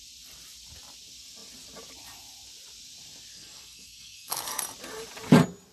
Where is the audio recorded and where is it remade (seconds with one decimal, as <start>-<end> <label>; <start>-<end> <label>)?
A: 0.0-3.3 recorded; 3.3-4.6 remade; 4.6-5.7 recorded

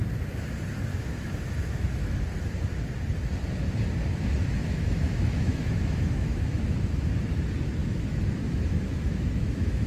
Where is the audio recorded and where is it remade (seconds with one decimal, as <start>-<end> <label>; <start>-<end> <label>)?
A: 0.0-0.9 recorded; 0.9-2.2 remade; 2.2-4.6 recorded; 4.6-7.1 remade; 7.1-7.8 recorded; 7.8-9.9 remade

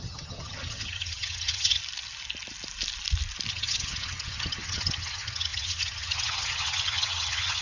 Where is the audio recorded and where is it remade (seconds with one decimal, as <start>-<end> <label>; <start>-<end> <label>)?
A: 0.0-1.8 remade; 1.8-3.5 recorded; 3.5-7.6 remade

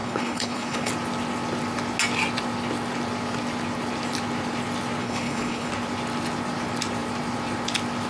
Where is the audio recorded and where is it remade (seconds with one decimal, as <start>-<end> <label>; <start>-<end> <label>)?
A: 0.0-0.9 remade; 0.9-5.0 recorded; 5.0-5.7 remade; 5.7-8.1 recorded